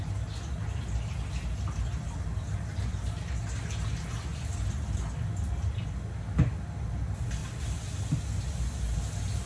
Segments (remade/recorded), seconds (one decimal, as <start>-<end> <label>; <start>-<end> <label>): 0.0-9.5 recorded